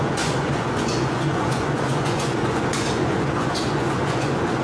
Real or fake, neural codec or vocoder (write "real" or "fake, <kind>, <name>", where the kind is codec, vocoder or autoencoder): fake, vocoder, Vocos